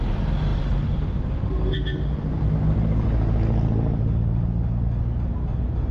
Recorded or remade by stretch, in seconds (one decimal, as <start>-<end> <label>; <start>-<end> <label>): 0.0-5.9 recorded

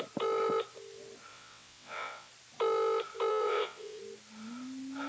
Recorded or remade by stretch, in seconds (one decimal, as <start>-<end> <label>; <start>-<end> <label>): 0.0-1.3 recorded; 1.3-2.3 remade; 2.3-3.3 recorded; 3.3-4.0 remade; 4.0-5.1 recorded

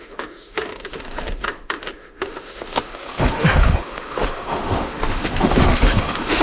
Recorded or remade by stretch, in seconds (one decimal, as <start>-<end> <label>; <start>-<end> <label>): 0.0-6.4 remade

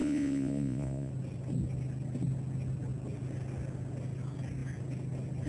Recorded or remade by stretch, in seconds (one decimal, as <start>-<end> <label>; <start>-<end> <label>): 0.0-1.1 remade; 1.1-5.5 recorded

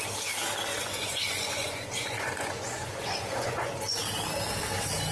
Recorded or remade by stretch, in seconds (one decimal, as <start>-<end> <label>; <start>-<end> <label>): 0.0-0.7 recorded; 0.7-3.8 remade; 3.8-5.1 recorded